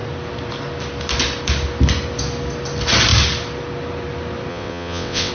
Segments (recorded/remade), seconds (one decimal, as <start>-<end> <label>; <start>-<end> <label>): 0.0-4.5 recorded; 4.5-5.3 remade